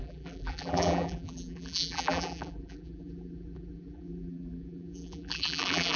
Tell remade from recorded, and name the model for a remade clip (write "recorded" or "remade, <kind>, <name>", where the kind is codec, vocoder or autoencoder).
remade, vocoder, BigVGAN v2